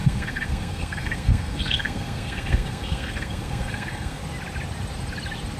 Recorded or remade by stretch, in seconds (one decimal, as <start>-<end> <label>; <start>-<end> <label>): 0.0-4.2 remade; 4.2-5.6 recorded